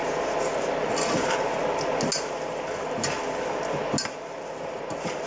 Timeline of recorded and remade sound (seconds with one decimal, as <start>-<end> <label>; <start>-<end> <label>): 0.0-5.3 recorded